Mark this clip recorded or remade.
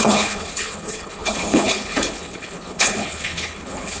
remade